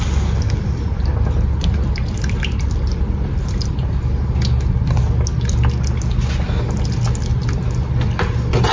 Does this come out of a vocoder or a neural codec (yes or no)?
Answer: no